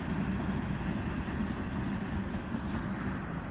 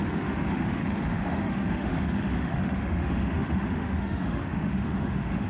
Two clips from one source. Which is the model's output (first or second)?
second